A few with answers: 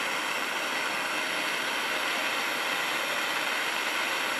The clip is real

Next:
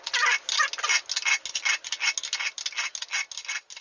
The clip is real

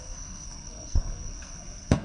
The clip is fake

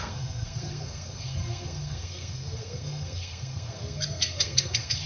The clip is fake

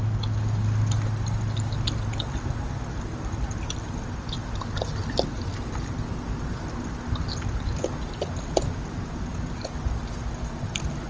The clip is real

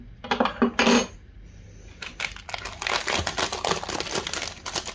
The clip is real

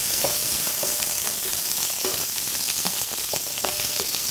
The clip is fake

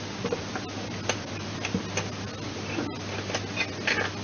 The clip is real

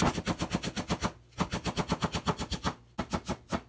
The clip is real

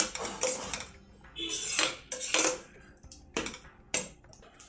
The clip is real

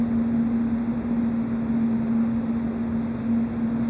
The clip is real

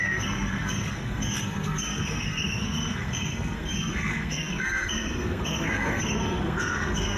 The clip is fake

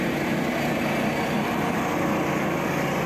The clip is real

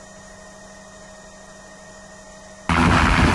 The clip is real